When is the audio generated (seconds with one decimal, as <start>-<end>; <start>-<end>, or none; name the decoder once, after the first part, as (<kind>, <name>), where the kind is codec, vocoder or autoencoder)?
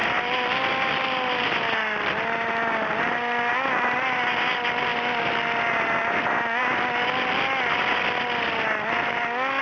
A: 0.0-4.3 (vocoder, BigVGAN v2); 4.9-6.6